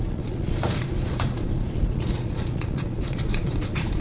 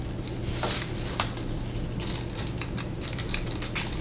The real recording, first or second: second